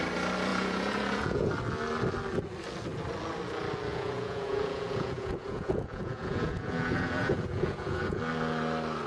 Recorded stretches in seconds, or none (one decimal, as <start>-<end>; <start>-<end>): 0.0-0.5; 1.5-3.9; 8.2-9.1